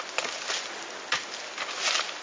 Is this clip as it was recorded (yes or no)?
yes